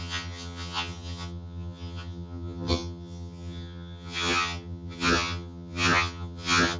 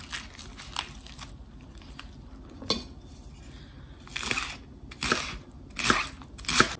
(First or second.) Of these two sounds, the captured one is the second